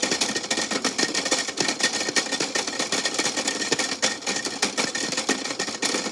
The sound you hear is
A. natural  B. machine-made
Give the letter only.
A